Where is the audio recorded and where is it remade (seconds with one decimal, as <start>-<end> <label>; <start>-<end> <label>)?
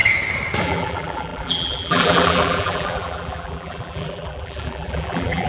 0.0-0.6 recorded; 0.6-5.5 remade